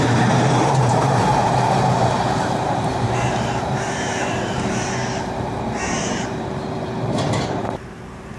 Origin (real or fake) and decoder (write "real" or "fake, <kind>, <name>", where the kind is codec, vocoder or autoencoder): fake, vocoder, BigVGAN v2